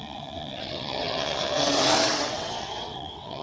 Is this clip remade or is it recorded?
remade